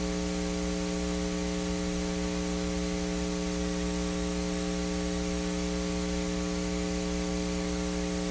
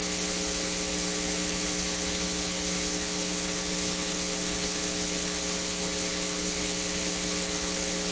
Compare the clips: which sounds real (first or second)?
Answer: first